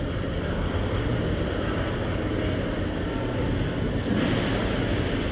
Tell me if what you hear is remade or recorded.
recorded